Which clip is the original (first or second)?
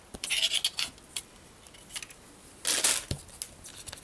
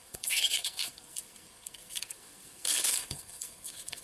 first